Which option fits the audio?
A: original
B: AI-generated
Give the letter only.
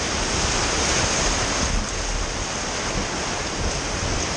A